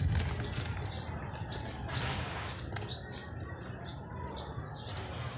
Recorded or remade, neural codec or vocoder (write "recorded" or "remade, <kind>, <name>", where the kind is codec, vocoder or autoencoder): recorded